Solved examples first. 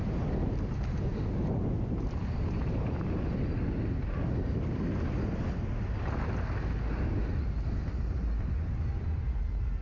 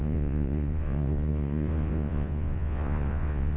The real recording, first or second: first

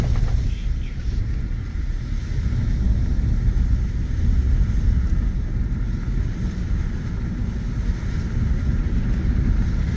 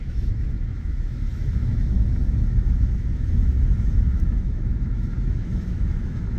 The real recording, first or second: first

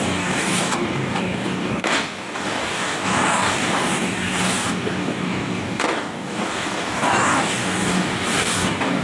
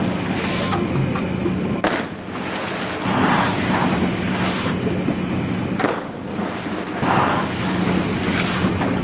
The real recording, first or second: second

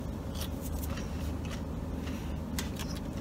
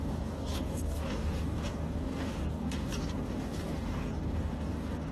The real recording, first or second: first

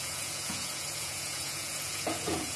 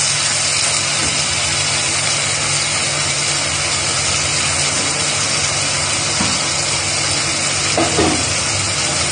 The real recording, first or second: second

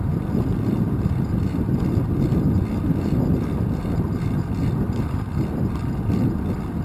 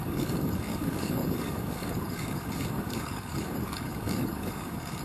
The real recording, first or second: first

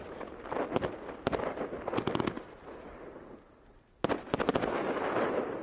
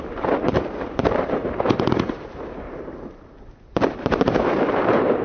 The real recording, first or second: first